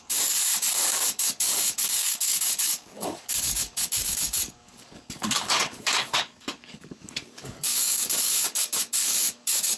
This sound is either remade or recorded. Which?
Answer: remade